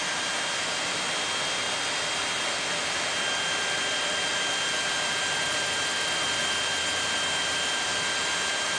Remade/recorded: recorded